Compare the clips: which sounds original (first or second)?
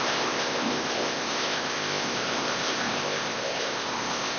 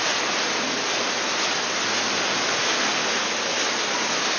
second